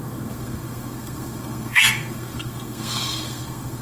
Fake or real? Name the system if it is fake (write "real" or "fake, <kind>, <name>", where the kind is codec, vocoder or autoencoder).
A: fake, codec, SNAC